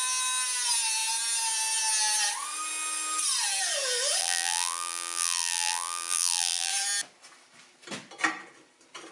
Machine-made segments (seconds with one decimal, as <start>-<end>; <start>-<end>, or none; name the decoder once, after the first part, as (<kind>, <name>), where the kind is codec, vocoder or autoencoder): 4.2-6.7 (vocoder, BigVGAN v2)